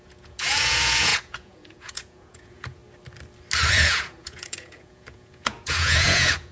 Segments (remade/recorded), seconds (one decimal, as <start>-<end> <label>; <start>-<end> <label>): 0.0-2.8 remade; 2.8-3.7 recorded; 3.7-6.5 remade